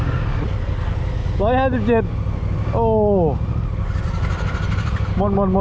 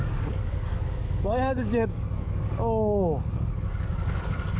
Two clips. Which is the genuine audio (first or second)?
first